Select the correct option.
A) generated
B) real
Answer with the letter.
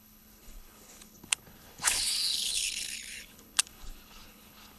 A